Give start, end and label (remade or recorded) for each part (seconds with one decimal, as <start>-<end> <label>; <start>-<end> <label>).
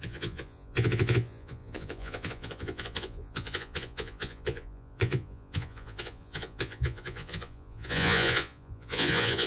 0.0-9.5 remade